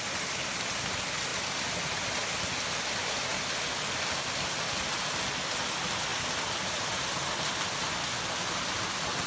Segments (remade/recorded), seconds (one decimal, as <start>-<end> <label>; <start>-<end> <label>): 0.0-9.3 recorded